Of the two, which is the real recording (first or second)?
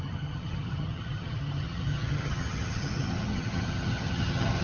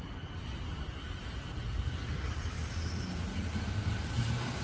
second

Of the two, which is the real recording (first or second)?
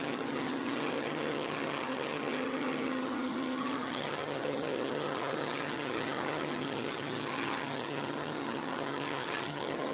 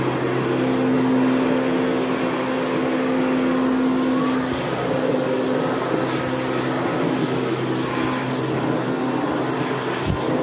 second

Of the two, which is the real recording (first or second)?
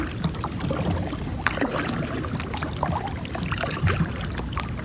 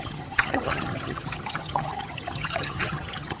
first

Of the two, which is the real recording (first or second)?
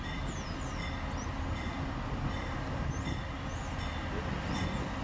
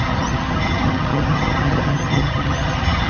first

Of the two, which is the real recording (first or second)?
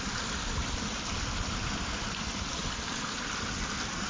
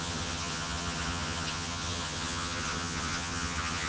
first